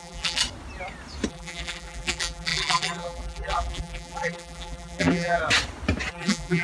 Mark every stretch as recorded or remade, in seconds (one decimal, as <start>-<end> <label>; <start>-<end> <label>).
0.0-0.4 remade; 0.4-1.3 recorded; 1.3-5.4 remade; 5.4-6.1 recorded; 6.1-6.6 remade